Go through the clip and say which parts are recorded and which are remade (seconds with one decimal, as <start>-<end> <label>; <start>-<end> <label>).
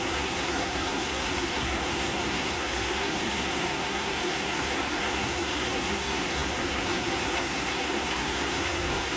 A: 0.0-9.2 remade